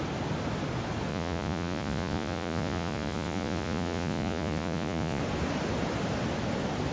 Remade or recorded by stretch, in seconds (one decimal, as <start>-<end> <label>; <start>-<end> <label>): 0.0-1.1 recorded; 1.1-5.2 remade; 5.2-6.9 recorded